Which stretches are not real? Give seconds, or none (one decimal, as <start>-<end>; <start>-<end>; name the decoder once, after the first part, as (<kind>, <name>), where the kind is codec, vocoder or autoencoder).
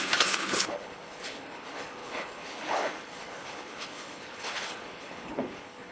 0.0-5.9 (codec, HILCodec)